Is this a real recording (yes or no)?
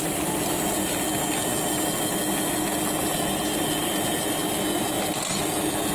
yes